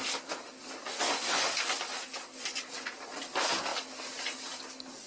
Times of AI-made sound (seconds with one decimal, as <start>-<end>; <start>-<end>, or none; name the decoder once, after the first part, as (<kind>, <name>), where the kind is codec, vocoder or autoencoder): 0.9-1.5 (vocoder, Vocos)